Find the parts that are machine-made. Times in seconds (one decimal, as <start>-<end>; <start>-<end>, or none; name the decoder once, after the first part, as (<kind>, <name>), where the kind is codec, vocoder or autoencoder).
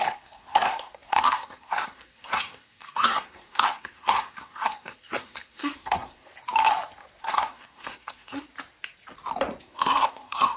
0.0-6.3 (codec, SNAC); 7.2-8.5; 9.6-10.6